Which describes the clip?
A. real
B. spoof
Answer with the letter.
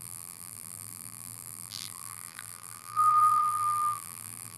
B